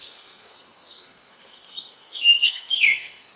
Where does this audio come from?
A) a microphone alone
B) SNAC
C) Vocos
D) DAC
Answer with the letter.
B